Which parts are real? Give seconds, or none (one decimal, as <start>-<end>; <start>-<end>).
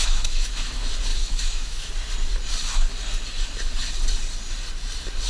0.7-1.1; 1.9-5.3